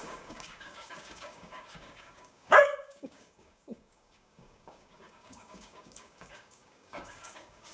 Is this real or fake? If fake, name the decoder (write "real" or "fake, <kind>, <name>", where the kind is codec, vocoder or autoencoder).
fake, codec, DAC